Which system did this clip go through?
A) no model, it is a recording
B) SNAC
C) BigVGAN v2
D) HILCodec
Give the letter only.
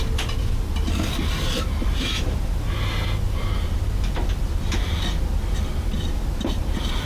A